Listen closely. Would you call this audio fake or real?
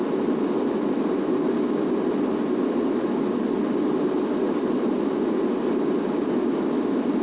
real